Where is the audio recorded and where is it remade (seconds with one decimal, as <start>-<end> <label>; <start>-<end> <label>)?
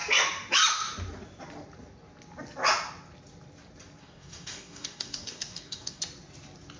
0.0-4.0 recorded; 4.0-6.0 remade; 6.0-6.8 recorded